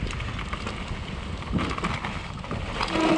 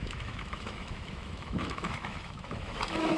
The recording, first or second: first